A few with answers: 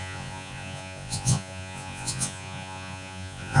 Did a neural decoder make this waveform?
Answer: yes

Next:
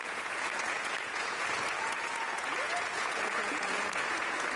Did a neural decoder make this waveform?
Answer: yes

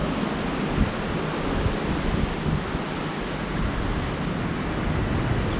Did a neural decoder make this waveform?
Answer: no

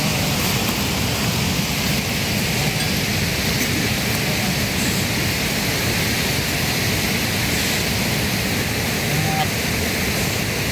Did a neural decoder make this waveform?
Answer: no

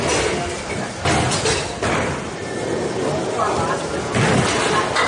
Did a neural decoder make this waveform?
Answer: no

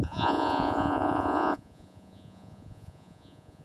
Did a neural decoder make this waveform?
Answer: yes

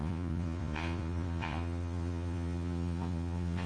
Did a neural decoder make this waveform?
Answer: yes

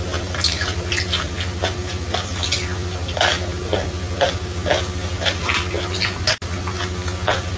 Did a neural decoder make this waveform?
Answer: no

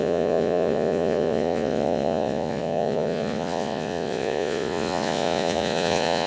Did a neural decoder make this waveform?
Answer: yes